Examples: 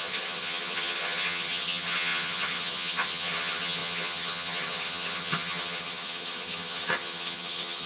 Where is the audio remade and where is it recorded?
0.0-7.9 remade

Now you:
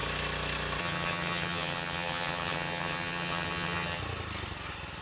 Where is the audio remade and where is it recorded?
0.0-0.8 recorded; 0.8-4.0 remade; 4.0-5.0 recorded

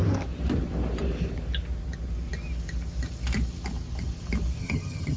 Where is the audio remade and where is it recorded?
0.0-4.6 recorded; 4.6-5.2 remade

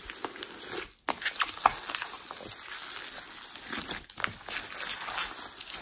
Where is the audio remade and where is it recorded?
0.0-5.8 recorded

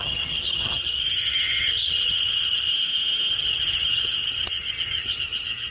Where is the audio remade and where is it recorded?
0.0-2.7 remade; 2.7-3.3 recorded; 3.3-5.7 remade

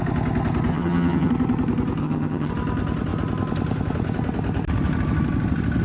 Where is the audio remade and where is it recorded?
0.0-0.7 recorded; 0.7-1.3 remade; 1.3-2.0 recorded; 2.0-2.5 remade; 2.5-5.8 recorded

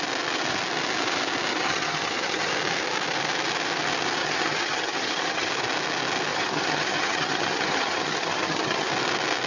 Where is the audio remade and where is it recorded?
0.0-1.5 recorded; 1.5-2.5 remade; 2.5-4.2 recorded; 4.2-5.5 remade; 5.5-6.3 recorded; 6.3-8.9 remade; 8.9-9.5 recorded

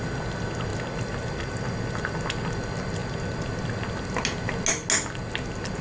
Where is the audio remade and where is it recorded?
0.0-5.8 recorded